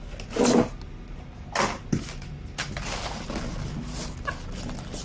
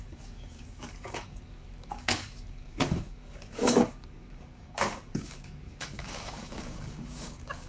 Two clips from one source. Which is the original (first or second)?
first